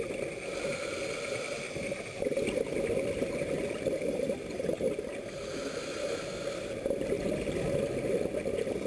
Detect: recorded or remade recorded